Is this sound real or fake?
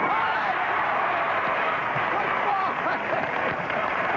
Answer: fake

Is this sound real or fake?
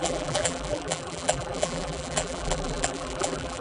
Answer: fake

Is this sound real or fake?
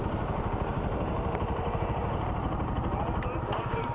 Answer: fake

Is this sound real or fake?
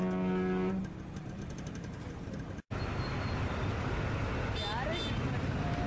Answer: real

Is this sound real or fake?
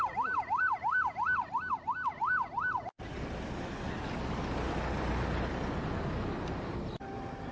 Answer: real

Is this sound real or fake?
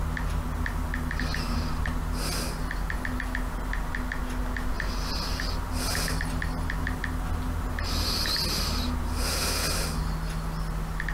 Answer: real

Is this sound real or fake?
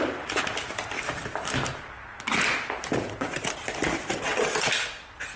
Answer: real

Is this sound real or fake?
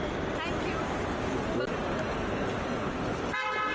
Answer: real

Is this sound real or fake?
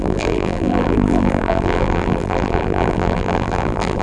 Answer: fake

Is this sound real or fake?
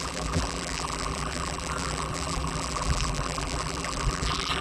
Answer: fake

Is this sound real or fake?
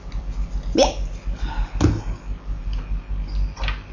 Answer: real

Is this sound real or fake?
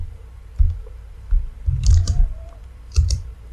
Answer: fake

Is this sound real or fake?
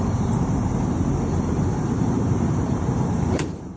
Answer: fake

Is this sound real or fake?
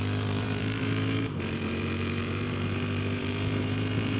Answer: fake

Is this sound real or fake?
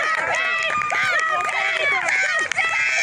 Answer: real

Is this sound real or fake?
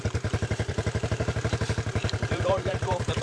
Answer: fake